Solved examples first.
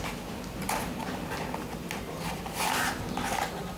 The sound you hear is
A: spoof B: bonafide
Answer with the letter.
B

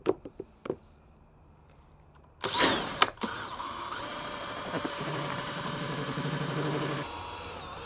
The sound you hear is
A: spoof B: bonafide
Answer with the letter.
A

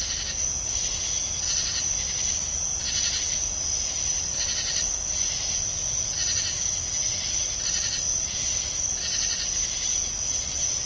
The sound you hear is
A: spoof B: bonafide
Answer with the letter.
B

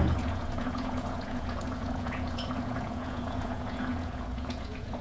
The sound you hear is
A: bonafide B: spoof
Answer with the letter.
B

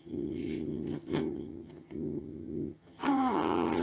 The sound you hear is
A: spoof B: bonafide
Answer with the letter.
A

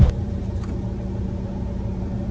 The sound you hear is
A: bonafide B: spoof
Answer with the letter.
B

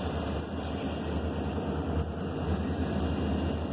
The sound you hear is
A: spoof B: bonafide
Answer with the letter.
B